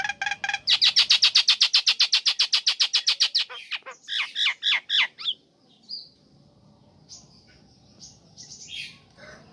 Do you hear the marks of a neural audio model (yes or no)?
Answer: no